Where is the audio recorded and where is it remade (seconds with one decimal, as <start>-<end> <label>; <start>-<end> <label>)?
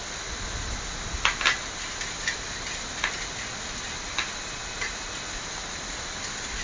0.0-6.6 recorded